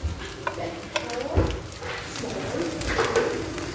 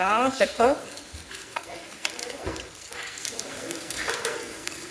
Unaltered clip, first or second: first